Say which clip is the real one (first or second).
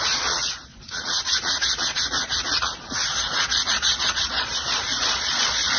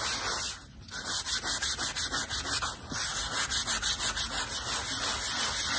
second